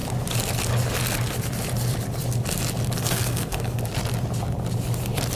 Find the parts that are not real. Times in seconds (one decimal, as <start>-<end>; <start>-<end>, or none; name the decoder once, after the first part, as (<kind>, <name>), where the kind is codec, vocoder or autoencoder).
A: 3.0-3.8 (codec, SNAC)